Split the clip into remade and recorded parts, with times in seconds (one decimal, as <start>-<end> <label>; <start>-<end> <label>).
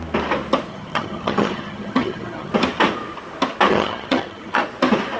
0.0-0.7 recorded; 0.7-2.5 remade; 2.5-3.7 recorded; 3.7-4.6 remade; 4.6-5.2 recorded